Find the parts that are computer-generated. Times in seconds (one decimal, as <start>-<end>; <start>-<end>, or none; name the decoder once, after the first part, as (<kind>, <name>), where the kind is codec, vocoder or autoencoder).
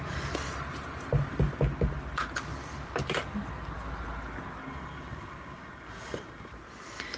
4.6-6.5 (codec, DAC)